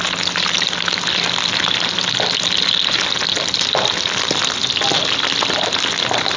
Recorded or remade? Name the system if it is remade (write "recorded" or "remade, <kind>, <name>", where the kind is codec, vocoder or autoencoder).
recorded